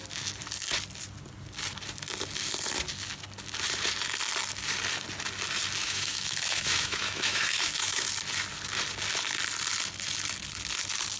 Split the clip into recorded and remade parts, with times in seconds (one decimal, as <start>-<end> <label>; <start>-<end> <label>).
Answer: 0.0-5.8 recorded; 5.8-8.1 remade; 8.1-11.2 recorded